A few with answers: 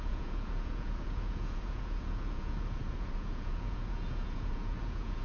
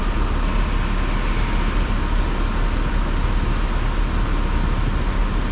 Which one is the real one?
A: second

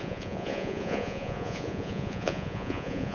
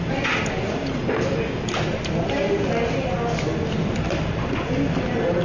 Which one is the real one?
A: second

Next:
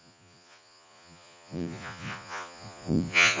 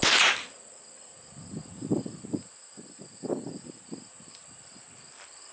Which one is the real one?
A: second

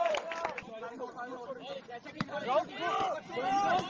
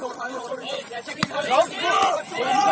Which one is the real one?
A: first